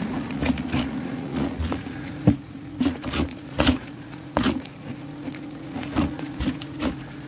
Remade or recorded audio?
remade